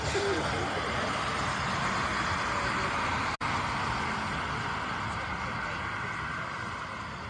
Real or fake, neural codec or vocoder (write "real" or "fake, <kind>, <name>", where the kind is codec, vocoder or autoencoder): real